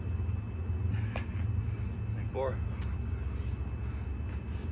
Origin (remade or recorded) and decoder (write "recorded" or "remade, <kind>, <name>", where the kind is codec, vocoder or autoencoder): recorded